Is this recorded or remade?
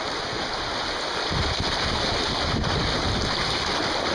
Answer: recorded